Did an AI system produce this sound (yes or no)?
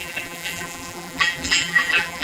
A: yes